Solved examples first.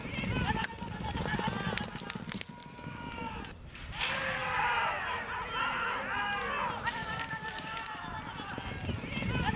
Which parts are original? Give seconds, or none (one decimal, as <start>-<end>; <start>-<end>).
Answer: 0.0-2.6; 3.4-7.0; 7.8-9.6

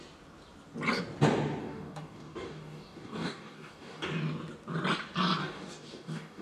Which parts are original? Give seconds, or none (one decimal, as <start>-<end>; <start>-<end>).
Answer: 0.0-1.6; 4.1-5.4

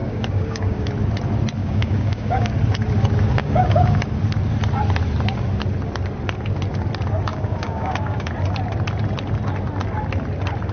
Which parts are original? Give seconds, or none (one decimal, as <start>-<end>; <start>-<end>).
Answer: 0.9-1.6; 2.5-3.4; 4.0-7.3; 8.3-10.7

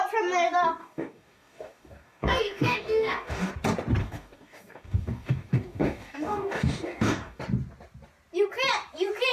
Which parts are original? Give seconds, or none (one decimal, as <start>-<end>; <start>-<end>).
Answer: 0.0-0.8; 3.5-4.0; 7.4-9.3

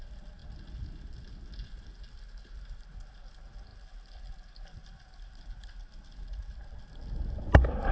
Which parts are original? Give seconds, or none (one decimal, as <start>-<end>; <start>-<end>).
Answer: 0.0-7.9

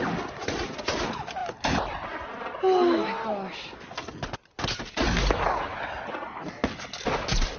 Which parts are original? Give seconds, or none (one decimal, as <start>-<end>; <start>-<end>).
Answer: 0.0-7.6

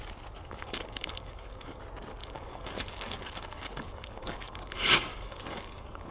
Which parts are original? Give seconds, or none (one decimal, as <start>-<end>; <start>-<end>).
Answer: 0.0-0.4; 1.8-2.2

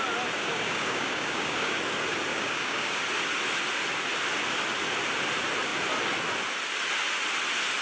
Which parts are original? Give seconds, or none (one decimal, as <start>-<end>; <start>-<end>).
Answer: 0.0-0.4; 1.8-2.3; 3.0-7.8